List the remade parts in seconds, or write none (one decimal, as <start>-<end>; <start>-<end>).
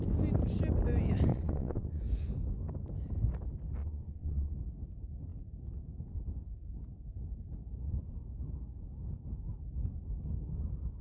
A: 1.3-2.0; 3.8-4.5